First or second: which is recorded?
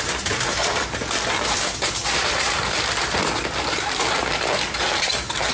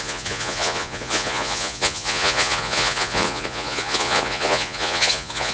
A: first